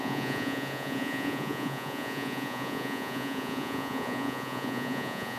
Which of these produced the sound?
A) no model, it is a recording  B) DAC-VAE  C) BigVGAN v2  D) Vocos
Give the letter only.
D